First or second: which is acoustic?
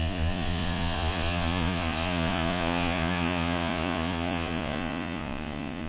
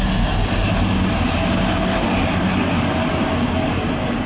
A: second